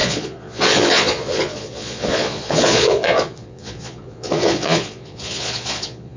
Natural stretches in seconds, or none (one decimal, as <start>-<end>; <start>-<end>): none